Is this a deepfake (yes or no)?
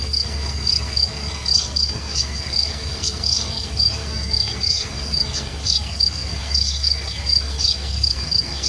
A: yes